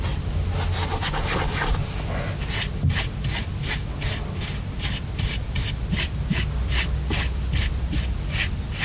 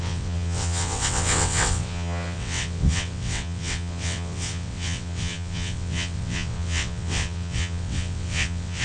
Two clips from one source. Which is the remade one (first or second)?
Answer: second